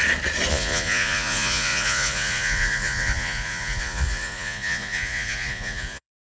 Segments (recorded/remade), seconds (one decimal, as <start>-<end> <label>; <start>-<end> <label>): 0.0-0.5 recorded; 0.5-6.4 remade